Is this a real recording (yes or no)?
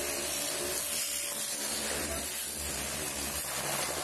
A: yes